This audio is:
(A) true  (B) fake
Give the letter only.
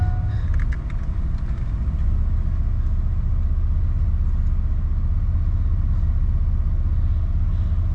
A